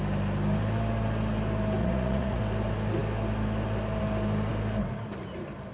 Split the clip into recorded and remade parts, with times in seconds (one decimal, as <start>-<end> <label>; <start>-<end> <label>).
0.0-1.8 recorded; 1.8-2.4 remade; 2.4-5.7 recorded